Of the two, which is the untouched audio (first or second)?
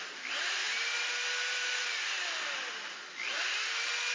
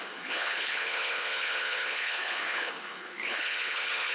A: first